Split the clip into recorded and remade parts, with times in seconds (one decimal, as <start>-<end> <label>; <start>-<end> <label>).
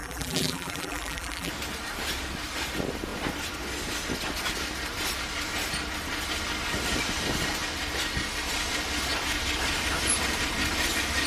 0.0-1.5 remade; 1.5-11.3 recorded